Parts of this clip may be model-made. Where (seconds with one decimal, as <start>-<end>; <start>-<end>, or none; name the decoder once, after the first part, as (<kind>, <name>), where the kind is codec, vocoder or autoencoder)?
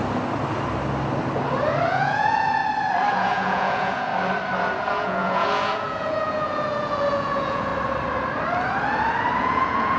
1.9-2.6 (vocoder, Vocos); 3.1-4.1; 4.9-7.7; 9.4-10.0